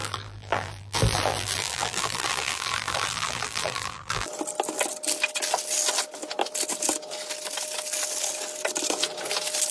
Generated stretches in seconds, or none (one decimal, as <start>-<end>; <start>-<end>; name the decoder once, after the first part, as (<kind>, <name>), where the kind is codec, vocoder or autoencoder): 0.0-4.3 (vocoder, BigVGAN v2)